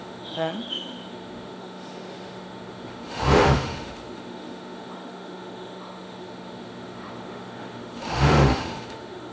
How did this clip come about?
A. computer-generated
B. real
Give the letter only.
A